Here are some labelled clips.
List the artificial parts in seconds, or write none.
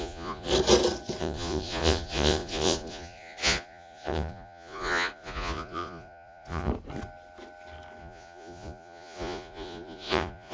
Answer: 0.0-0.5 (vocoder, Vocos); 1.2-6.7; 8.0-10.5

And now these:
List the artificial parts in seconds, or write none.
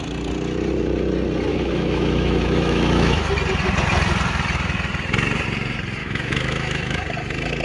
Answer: 1.5-3.3 (autoencoder, DAC-VAE); 6.0-7.0